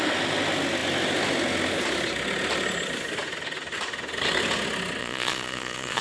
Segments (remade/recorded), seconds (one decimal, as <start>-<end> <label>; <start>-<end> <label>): 0.0-5.0 recorded; 5.0-6.0 remade